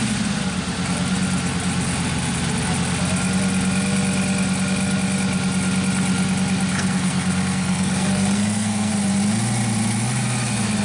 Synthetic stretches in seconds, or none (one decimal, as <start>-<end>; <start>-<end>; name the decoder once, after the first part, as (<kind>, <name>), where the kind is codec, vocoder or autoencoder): 6.7-8.9 (codec, SNAC)